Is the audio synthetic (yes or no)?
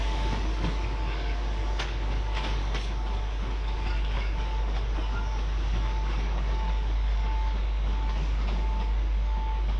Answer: yes